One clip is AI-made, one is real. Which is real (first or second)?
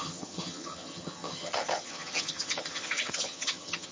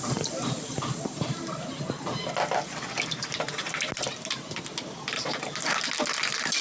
second